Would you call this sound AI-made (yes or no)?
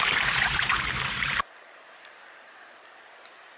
yes